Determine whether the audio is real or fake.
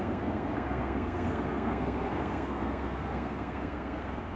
fake